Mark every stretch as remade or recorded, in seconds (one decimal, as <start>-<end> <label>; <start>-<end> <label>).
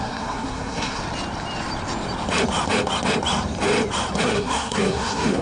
0.0-1.0 remade; 1.0-4.2 recorded; 4.2-5.4 remade